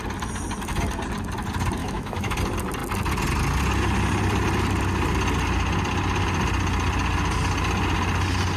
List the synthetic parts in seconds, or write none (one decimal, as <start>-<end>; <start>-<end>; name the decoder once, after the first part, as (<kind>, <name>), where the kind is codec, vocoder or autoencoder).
1.8-2.4 (autoencoder, DAC-VAE)